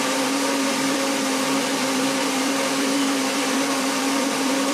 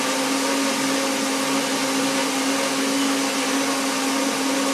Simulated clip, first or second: first